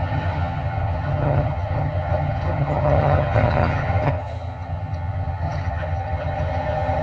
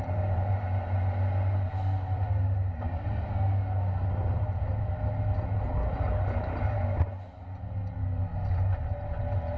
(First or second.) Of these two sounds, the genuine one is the second